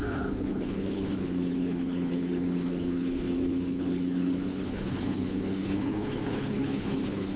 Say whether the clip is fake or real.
fake